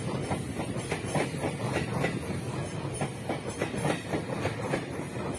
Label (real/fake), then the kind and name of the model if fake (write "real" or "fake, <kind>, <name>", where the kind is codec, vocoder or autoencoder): real